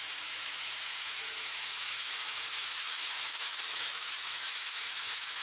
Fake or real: fake